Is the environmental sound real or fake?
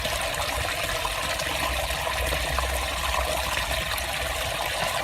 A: real